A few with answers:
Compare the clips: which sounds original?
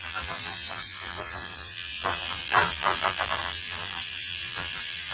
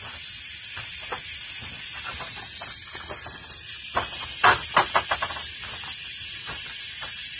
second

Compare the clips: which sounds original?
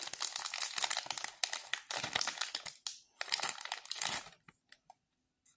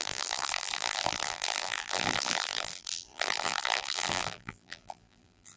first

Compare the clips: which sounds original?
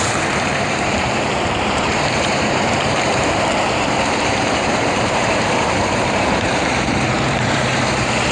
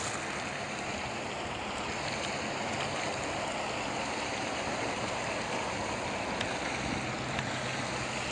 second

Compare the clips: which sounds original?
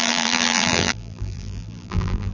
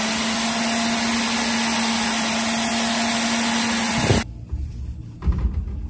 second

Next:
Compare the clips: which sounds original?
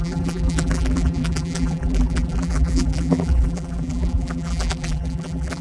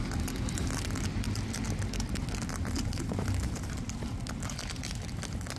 second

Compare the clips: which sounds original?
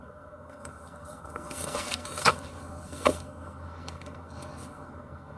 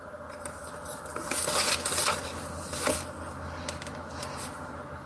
second